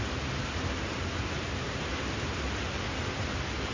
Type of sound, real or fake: real